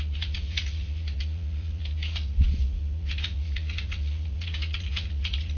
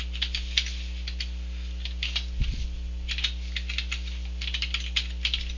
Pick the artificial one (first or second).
first